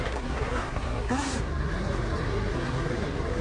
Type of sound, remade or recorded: remade